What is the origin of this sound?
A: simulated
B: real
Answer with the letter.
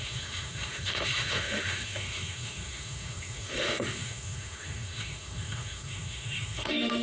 A